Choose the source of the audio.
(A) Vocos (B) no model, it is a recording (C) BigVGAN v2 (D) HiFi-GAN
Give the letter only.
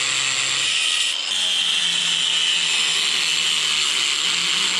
B